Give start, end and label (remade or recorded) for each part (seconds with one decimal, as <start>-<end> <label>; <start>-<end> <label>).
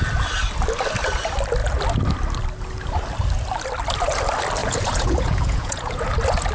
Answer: 0.0-4.6 recorded; 4.6-6.1 remade; 6.1-6.5 recorded